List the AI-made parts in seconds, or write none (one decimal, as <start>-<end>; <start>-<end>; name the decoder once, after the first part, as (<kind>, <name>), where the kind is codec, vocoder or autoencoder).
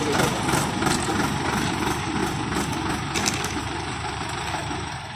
0.0-2.2 (vocoder, BigVGAN v2); 3.6-5.2